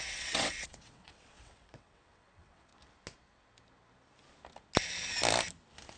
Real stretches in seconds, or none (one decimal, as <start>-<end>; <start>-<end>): 2.7-6.0